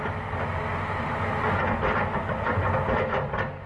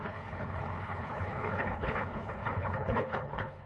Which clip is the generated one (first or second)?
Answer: second